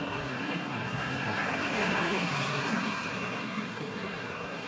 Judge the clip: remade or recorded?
remade